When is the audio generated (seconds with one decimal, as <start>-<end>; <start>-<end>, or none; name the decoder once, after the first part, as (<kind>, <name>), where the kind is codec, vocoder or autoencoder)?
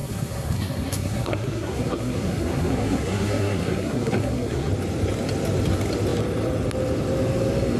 0.0-4.7 (codec, SNAC)